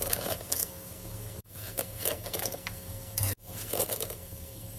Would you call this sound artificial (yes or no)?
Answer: yes